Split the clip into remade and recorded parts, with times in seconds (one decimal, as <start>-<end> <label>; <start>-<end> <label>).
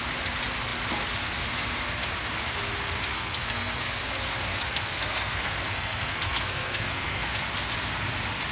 0.0-3.1 recorded; 3.1-4.0 remade; 4.0-4.5 recorded; 4.5-7.3 remade; 7.3-8.5 recorded